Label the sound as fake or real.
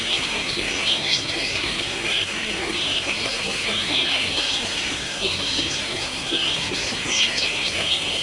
fake